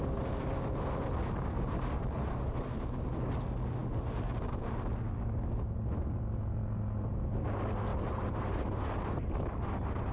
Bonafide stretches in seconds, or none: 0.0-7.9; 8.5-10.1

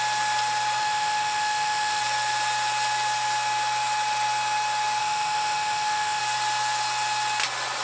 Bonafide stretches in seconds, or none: 0.0-0.8; 2.0-5.0; 6.2-7.8

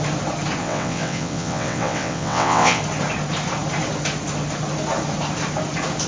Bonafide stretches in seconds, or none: 0.0-0.6; 2.8-6.1

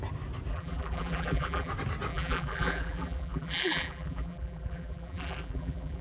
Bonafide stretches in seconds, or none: 0.0-0.5; 1.7-2.1

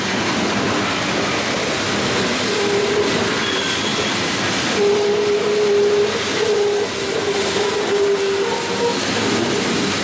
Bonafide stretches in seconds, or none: 0.0-10.0